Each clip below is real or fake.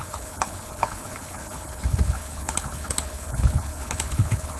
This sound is fake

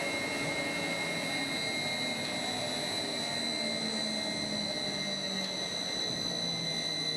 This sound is real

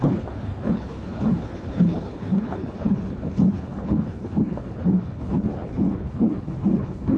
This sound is fake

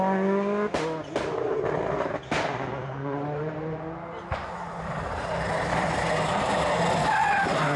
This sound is real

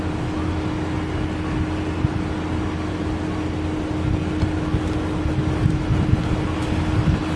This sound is real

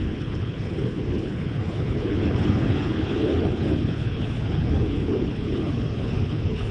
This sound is fake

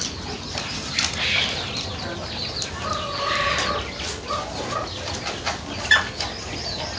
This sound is real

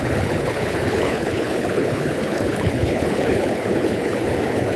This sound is fake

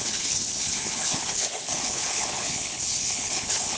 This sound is fake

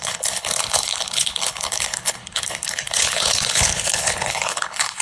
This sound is fake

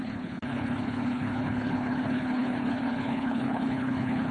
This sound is fake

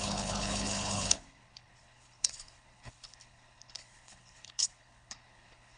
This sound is fake